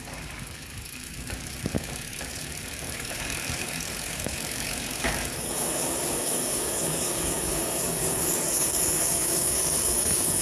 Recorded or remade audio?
remade